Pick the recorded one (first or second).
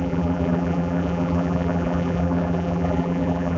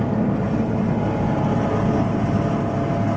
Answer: second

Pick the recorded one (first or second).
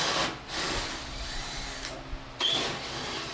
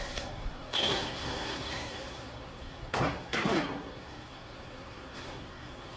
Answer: first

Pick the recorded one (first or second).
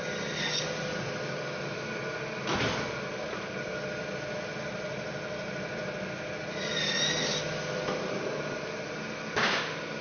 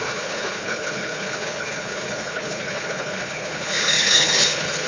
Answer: first